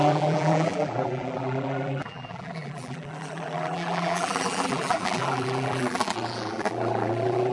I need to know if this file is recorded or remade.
remade